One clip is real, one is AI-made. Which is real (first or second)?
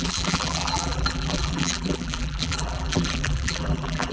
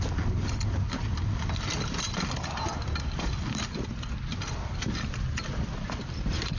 second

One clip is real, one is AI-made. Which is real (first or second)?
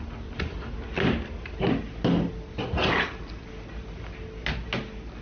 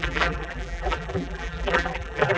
first